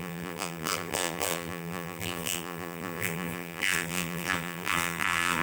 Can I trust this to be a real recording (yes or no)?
no